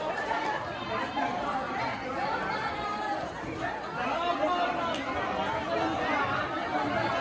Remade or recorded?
recorded